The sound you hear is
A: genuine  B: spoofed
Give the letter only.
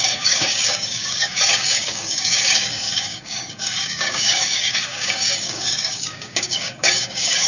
B